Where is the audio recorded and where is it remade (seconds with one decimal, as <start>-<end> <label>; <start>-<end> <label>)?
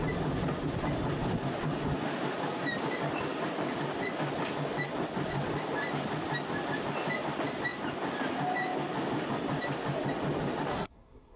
0.0-10.7 recorded; 10.7-11.4 remade